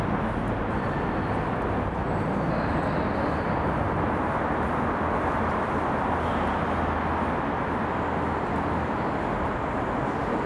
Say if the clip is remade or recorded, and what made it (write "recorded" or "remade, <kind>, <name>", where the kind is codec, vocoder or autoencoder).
recorded